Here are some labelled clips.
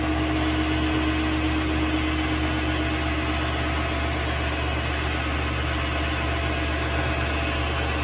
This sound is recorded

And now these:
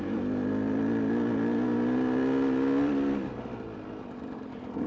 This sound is recorded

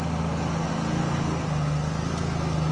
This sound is recorded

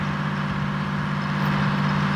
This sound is recorded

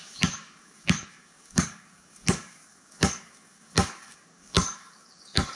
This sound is remade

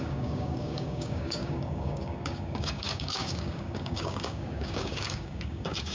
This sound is remade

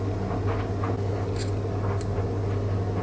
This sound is recorded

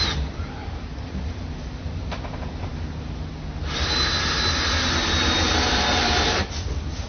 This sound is recorded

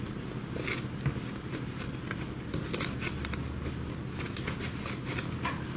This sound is recorded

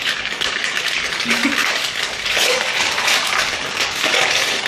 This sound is remade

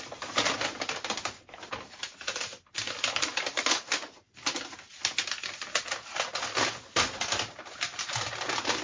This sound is recorded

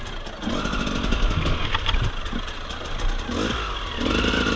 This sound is recorded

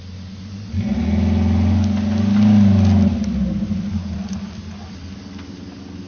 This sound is recorded